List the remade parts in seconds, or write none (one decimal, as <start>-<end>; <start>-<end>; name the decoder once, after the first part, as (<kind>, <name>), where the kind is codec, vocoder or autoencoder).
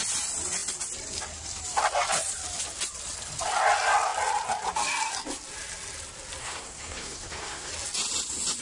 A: 6.4-7.7 (codec, SNAC)